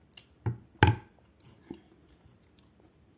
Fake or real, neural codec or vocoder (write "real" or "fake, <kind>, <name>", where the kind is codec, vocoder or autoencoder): real